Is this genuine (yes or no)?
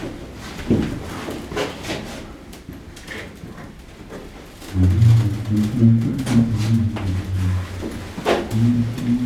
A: yes